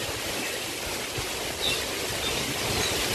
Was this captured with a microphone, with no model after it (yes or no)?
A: yes